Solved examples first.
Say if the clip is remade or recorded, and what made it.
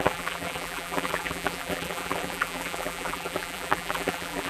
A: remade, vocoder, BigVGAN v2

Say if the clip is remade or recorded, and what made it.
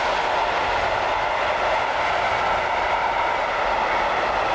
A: recorded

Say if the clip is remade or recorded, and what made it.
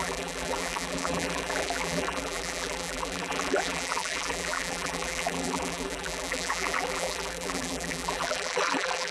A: remade, vocoder, BigVGAN v2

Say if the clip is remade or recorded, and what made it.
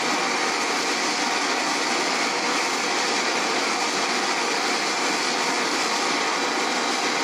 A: recorded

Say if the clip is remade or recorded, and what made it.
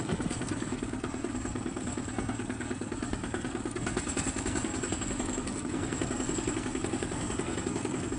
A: remade, codec, SNAC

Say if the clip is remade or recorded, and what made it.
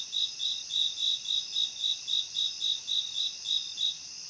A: recorded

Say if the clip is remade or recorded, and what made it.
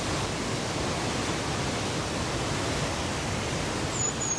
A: recorded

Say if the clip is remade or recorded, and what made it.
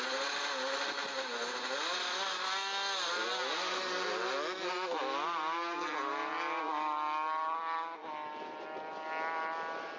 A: recorded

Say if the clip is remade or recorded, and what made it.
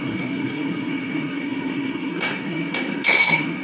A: remade, codec, SNAC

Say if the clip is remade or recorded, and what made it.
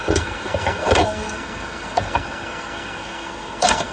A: remade, codec, SNAC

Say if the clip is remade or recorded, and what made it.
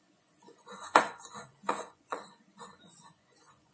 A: remade, vocoder, Vocos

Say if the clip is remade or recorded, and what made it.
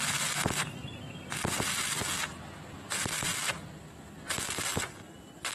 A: recorded